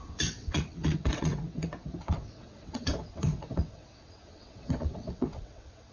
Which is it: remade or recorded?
remade